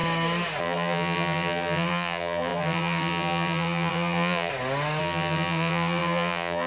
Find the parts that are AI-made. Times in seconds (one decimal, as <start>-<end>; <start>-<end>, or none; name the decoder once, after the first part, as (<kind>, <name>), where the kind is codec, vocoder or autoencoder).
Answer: 0.6-4.5 (vocoder, BigVGAN v2); 5.0-6.7